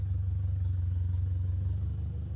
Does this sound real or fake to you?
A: real